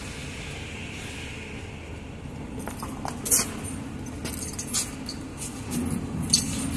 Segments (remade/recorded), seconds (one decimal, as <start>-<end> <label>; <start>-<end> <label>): 0.0-6.8 recorded